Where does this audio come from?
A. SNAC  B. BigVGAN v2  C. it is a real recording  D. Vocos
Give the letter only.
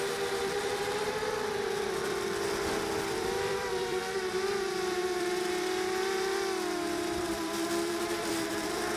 B